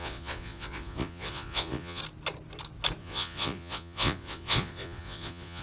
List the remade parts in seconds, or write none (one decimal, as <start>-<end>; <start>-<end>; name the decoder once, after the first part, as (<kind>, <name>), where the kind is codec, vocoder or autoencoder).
0.0-2.0 (vocoder, Vocos); 3.0-5.6